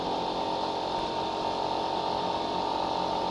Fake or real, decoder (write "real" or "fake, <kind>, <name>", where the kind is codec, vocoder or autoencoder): real